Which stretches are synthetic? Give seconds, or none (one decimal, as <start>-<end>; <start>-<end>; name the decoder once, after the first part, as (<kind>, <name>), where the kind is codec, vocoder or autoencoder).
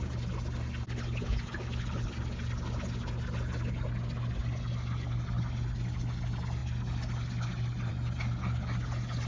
none